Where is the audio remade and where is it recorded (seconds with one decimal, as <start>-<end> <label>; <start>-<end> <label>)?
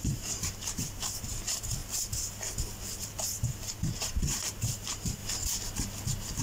0.0-1.8 remade; 1.8-3.1 recorded; 3.1-5.2 remade; 5.2-6.4 recorded